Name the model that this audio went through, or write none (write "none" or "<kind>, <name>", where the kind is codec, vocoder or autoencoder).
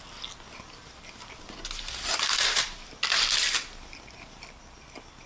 none